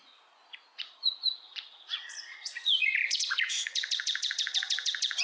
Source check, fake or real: fake